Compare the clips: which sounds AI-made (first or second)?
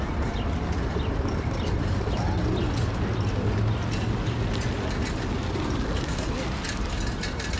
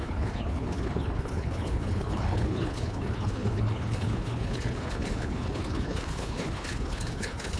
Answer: second